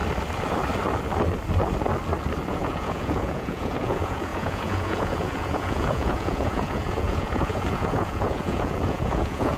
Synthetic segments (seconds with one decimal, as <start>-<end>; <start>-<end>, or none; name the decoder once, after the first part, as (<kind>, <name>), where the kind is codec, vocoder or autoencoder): 2.5-9.6 (vocoder, Vocos)

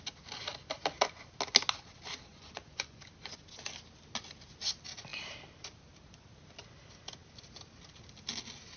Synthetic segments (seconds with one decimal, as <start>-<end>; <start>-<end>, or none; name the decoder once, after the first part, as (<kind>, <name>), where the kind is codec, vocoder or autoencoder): 2.3-3.0 (vocoder, Vocos)